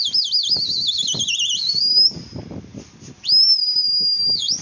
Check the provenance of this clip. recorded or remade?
recorded